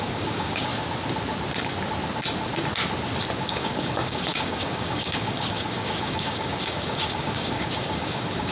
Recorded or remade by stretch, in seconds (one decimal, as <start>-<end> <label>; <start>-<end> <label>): 0.0-0.7 remade; 0.7-3.5 recorded; 3.5-8.5 remade